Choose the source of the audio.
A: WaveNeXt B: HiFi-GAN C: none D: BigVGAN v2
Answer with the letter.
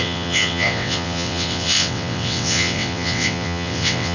A